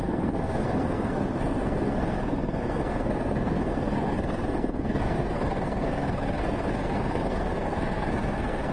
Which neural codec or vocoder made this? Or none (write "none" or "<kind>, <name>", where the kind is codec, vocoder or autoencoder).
codec, SNAC